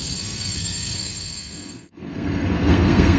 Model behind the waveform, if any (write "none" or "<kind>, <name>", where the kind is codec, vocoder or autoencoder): codec, SNAC